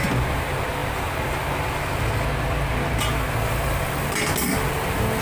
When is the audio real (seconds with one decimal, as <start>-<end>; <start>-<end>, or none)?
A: 0.0-5.2